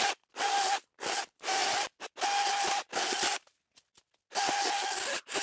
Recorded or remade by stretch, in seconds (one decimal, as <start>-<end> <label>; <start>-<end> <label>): 0.0-5.4 recorded